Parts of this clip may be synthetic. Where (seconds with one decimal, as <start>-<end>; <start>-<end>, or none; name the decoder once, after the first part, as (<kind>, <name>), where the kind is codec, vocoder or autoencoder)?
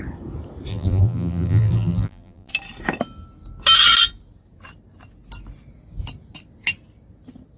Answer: 0.7-2.5 (vocoder, BigVGAN v2)